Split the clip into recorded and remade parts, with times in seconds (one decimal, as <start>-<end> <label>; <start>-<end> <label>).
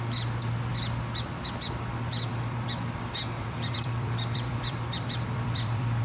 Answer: 0.0-2.3 recorded; 2.3-6.0 remade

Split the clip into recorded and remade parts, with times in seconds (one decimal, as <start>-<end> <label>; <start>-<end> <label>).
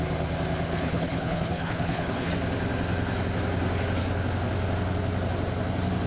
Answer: 0.0-0.7 recorded; 0.7-2.3 remade; 2.3-6.1 recorded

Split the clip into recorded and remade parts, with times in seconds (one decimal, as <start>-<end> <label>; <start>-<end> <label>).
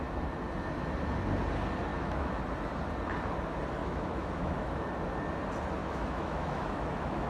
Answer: 0.0-1.9 recorded; 1.9-2.4 remade; 2.4-3.8 recorded; 3.8-4.9 remade; 4.9-5.8 recorded; 5.8-7.3 remade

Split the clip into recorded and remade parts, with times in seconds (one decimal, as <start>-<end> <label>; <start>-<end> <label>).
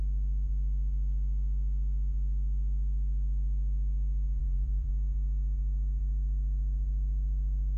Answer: 0.0-4.4 recorded; 4.4-4.9 remade; 4.9-7.8 recorded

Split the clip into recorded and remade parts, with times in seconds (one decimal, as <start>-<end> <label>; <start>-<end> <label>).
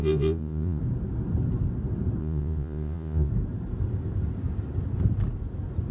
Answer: 0.0-0.8 remade; 0.8-2.2 recorded; 2.2-3.3 remade; 3.3-5.9 recorded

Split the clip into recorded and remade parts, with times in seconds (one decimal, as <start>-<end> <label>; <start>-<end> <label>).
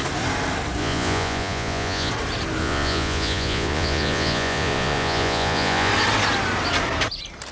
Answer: 0.0-0.8 recorded; 0.8-2.1 remade; 2.1-2.6 recorded; 2.6-5.9 remade; 5.9-7.5 recorded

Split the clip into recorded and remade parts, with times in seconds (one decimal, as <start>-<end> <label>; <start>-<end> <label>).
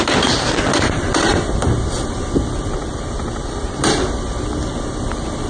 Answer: 0.0-5.5 recorded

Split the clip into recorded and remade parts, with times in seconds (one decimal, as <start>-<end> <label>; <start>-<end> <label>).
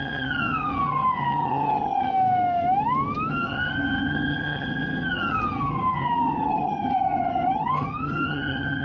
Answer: 0.0-2.1 remade; 2.1-3.3 recorded; 3.3-8.8 remade